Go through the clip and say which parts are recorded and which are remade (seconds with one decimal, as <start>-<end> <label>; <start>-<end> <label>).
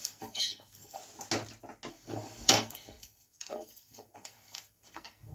0.0-1.0 remade; 1.0-1.9 recorded; 1.9-5.3 remade